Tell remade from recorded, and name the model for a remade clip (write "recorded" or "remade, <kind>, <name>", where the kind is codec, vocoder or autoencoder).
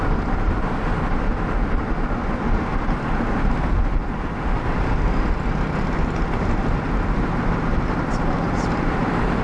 recorded